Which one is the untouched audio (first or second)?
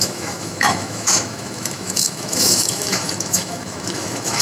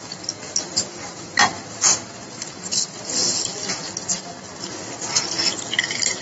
second